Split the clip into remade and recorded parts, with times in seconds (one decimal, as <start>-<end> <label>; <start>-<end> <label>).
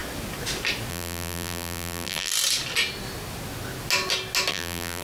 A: 0.0-0.9 recorded; 0.9-2.3 remade; 2.3-4.5 recorded; 4.5-5.0 remade